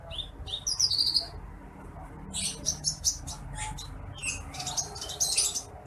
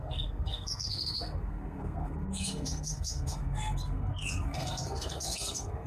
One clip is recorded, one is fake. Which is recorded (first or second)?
first